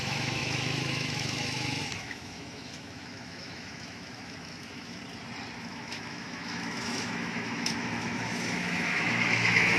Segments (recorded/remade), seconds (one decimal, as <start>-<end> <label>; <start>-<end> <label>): 0.0-5.0 remade; 5.0-5.6 recorded; 5.6-9.8 remade